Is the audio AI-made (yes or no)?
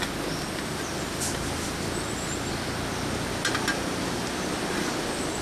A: no